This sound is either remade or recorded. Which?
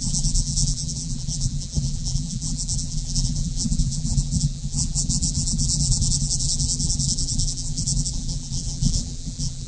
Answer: remade